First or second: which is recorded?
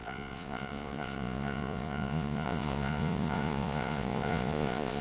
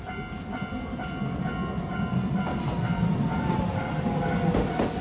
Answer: second